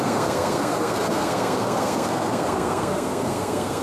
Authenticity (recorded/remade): remade